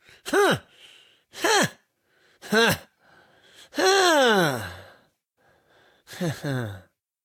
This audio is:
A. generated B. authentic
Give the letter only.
B